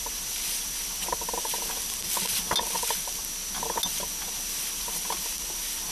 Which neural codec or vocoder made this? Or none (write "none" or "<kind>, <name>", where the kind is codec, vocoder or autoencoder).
none